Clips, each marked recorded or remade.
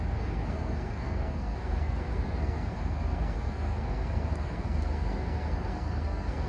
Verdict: remade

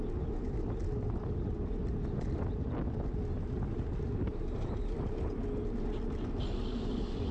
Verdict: recorded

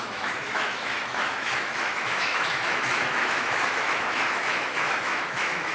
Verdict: remade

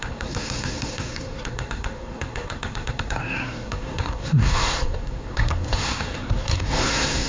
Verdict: remade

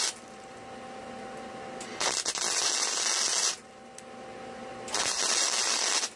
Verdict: recorded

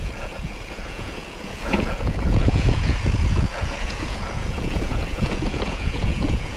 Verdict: remade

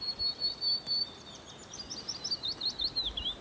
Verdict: recorded